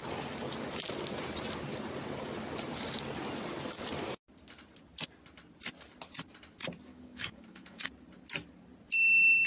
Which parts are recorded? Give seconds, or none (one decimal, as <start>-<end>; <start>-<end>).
0.0-6.9; 7.9-9.5